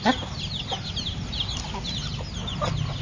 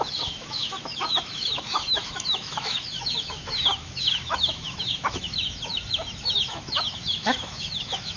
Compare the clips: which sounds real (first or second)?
first